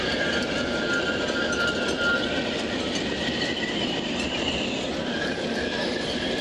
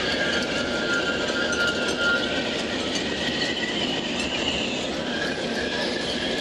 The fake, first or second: first